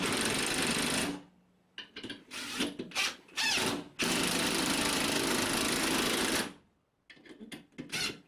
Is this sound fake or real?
real